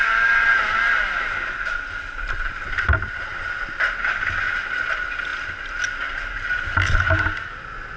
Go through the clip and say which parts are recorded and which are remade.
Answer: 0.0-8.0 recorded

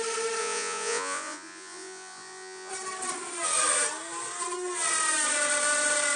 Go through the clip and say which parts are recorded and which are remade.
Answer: 0.0-0.4 recorded; 0.4-2.7 remade; 2.7-6.2 recorded

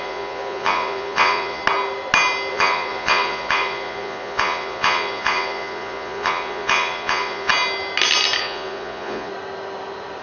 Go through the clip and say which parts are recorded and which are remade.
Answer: 0.0-1.6 remade; 1.6-2.5 recorded; 2.5-7.5 remade; 7.5-8.4 recorded; 8.4-9.3 remade; 9.3-10.2 recorded

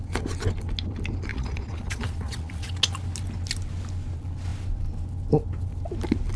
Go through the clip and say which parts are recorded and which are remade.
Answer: 0.0-1.3 recorded; 1.3-2.7 remade; 2.7-6.4 recorded

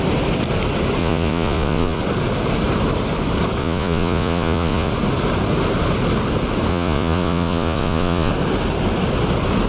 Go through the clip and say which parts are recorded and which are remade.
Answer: 0.0-1.0 recorded; 1.0-2.0 remade; 2.0-3.6 recorded; 3.6-4.9 remade; 4.9-6.7 recorded; 6.7-8.3 remade; 8.3-9.7 recorded

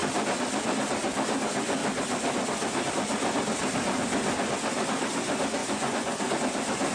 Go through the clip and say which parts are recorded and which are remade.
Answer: 0.0-5.6 recorded; 5.6-6.3 remade; 6.3-6.9 recorded

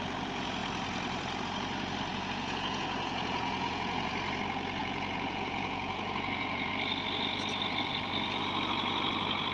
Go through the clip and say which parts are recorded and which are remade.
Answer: 0.0-2.1 recorded; 2.1-4.1 remade; 4.1-4.8 recorded; 4.8-6.7 remade; 6.7-9.5 recorded